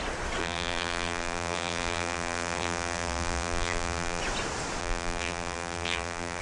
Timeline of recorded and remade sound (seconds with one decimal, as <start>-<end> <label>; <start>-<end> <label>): 0.0-0.4 recorded; 0.4-4.2 remade; 4.2-4.8 recorded; 4.8-6.4 remade